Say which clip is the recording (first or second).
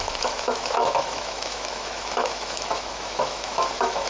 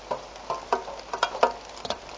second